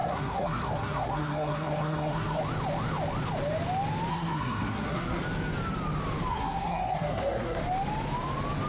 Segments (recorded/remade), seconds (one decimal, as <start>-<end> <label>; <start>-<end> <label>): 0.0-2.4 remade; 2.4-4.1 recorded; 4.1-5.2 remade; 5.2-6.3 recorded; 6.3-7.6 remade; 7.6-8.7 recorded